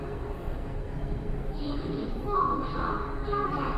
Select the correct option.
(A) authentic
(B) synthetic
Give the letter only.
B